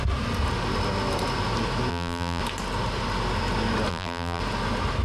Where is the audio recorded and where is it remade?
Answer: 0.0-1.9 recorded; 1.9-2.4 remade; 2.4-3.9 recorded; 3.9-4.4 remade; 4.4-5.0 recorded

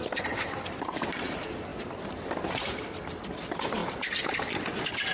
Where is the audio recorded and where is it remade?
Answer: 0.0-5.1 recorded

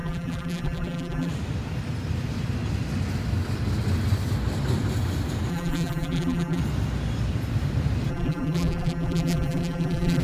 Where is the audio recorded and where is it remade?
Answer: 0.0-1.3 remade; 1.3-5.5 recorded; 5.5-6.6 remade; 6.6-8.1 recorded; 8.1-10.2 remade

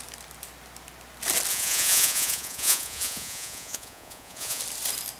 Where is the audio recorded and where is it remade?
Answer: 0.0-1.5 recorded; 1.5-4.6 remade; 4.6-5.2 recorded

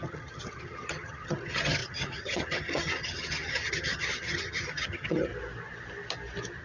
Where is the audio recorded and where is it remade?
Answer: 0.0-5.3 remade; 5.3-6.6 recorded

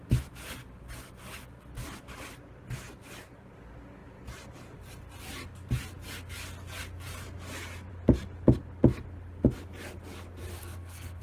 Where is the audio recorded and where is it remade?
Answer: 0.0-10.6 recorded; 10.6-11.2 remade